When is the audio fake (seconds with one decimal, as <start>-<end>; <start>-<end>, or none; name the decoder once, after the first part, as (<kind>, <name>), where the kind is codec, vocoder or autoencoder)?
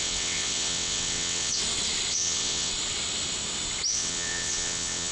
0.0-1.6 (vocoder, WaveNeXt); 2.1-2.7; 3.9-5.1